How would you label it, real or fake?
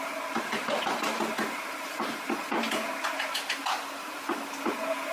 real